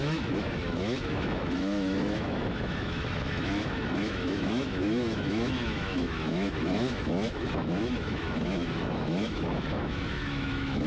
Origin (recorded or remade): remade